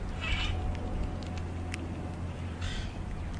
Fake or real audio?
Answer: real